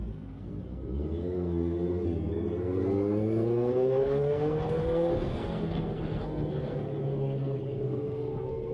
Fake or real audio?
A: fake